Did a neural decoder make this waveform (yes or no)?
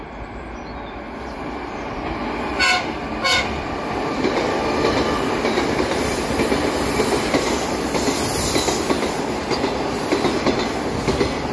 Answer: no